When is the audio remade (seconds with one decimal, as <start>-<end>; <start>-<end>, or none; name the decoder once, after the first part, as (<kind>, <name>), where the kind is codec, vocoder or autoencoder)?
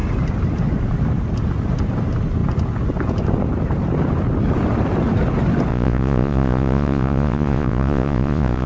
5.7-8.7 (vocoder, Vocos)